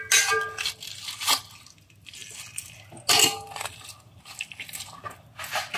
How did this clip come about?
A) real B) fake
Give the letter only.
A